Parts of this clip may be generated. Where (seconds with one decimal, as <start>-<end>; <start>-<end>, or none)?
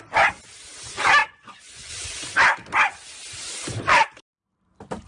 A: 1.2-1.9